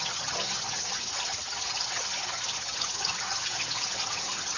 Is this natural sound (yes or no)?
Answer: no